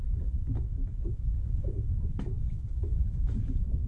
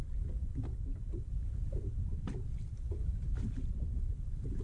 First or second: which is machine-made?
first